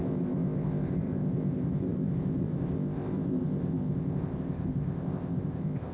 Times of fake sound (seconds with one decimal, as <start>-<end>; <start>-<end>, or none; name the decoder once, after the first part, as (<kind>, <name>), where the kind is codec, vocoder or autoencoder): 0.0-5.9 (codec, ZipCodec)